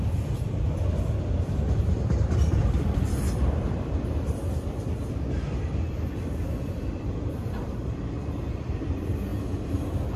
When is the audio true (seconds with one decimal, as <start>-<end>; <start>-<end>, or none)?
9.3-10.2